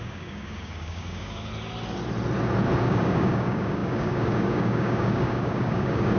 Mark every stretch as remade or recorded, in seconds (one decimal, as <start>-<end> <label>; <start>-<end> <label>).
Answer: 0.0-1.5 remade; 1.5-2.8 recorded; 2.8-6.2 remade